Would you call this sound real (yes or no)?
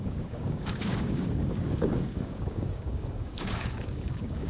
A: no